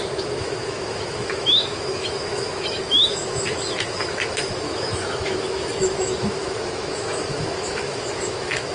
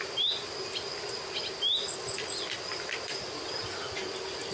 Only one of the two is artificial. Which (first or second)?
first